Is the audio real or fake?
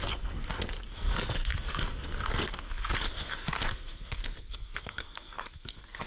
fake